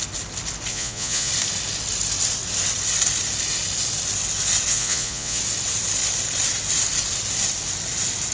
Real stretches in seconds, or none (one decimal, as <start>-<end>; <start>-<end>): 0.0-0.7; 1.3-4.7; 5.4-8.3